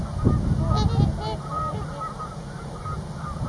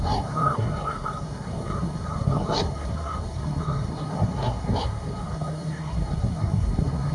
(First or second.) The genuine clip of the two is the first